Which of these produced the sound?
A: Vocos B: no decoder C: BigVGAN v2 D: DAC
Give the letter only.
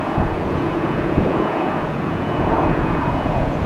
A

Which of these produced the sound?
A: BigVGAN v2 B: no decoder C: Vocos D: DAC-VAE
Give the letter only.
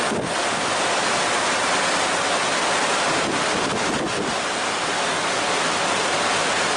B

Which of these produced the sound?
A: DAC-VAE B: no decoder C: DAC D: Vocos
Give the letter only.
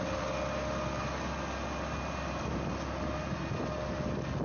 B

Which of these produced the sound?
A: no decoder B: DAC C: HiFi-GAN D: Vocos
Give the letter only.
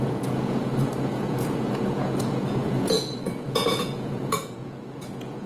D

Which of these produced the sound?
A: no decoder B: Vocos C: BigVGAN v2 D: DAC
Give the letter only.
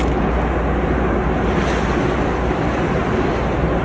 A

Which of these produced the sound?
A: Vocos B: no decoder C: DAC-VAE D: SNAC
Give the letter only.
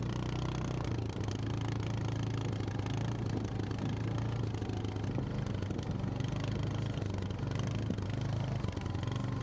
B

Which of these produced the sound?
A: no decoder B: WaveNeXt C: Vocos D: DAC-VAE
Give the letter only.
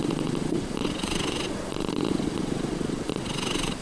C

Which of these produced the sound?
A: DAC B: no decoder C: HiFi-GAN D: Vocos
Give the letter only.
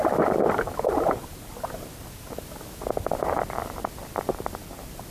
B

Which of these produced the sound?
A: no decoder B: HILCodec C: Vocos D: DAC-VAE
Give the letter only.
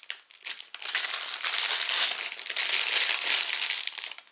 A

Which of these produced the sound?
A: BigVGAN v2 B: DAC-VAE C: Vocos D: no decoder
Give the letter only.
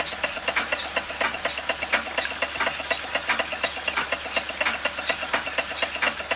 D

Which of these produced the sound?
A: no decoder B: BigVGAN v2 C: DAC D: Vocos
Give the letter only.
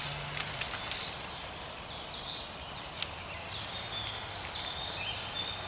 A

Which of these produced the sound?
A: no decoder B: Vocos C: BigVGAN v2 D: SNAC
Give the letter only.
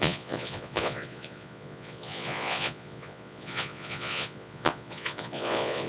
B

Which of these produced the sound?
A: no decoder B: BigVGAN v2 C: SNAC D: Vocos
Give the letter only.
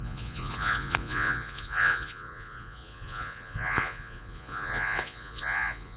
D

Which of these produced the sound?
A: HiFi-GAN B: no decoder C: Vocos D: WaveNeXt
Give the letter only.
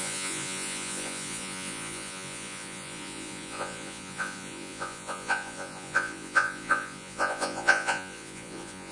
C